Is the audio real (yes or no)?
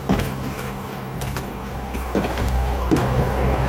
no